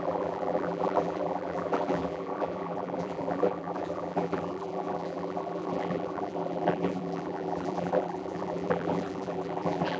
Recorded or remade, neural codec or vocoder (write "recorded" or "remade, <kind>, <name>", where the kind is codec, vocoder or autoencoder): remade, vocoder, BigVGAN v2